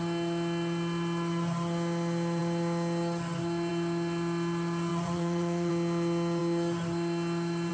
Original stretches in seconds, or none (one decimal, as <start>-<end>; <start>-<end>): 0.0-4.9; 5.7-7.7